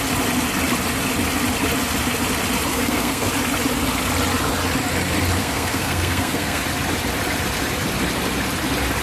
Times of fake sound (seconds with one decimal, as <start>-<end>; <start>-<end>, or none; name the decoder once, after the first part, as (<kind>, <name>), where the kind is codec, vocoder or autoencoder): 2.7-3.3 (codec, SNAC); 5.4-6.6